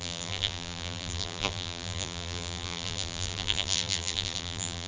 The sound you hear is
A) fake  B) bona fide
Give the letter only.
A